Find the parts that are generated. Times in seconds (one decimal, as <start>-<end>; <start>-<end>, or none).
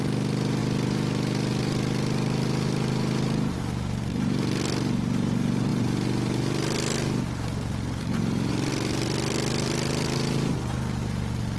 none